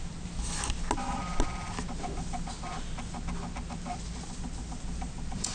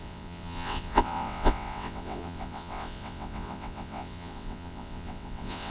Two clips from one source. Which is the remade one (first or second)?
second